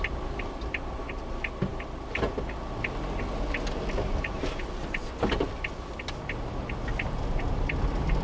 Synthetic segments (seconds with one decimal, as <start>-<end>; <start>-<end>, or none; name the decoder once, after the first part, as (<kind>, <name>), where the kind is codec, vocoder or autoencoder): none